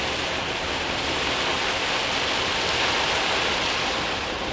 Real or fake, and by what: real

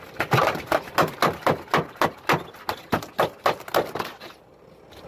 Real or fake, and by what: real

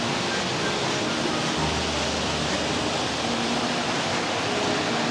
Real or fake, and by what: real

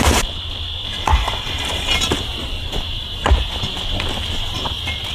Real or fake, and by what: real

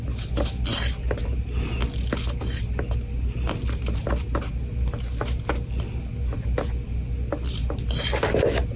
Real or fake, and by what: real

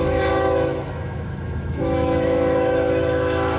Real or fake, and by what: fake, autoencoder, DAC-VAE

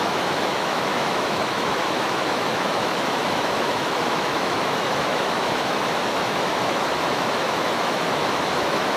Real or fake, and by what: fake, autoencoder, DAC-VAE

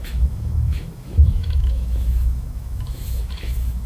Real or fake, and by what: fake, autoencoder, DAC-VAE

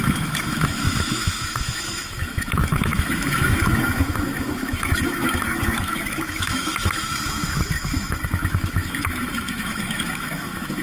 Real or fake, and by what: fake, autoencoder, DAC-VAE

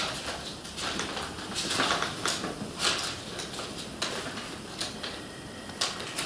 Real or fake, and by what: real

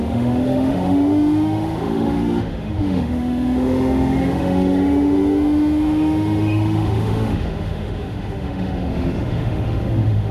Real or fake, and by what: fake, autoencoder, DAC-VAE